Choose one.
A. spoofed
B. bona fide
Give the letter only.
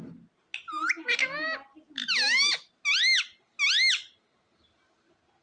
B